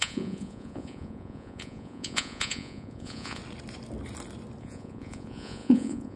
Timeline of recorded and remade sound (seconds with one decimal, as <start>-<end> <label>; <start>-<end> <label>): 0.0-3.4 remade; 3.4-4.6 recorded; 4.6-6.2 remade

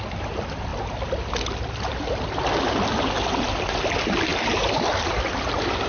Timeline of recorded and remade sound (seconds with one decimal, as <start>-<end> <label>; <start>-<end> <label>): 0.0-5.9 recorded

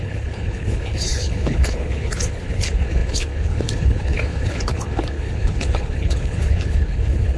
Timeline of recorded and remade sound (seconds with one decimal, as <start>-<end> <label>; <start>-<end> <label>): 0.0-7.4 remade

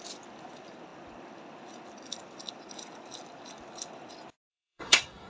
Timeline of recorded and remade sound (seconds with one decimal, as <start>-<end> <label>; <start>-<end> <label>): 0.0-4.5 recorded; 4.5-5.3 remade

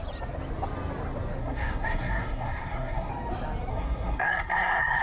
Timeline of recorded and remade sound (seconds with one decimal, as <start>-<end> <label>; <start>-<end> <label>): 0.0-1.4 recorded; 1.4-3.1 remade; 3.1-3.7 recorded; 3.7-5.0 remade

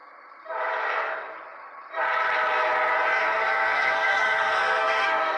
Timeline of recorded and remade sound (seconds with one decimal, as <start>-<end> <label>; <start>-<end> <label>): 0.0-3.2 recorded; 3.2-5.4 remade

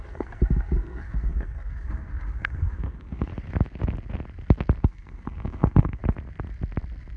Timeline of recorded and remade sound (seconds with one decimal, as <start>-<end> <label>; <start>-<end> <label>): 0.0-3.3 remade; 3.3-4.8 recorded; 4.8-6.0 remade; 6.0-7.2 recorded